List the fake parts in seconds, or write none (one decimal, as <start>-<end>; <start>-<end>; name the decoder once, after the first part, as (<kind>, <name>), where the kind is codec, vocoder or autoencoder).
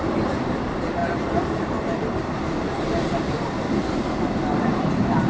0.0-5.3 (vocoder, BigVGAN v2)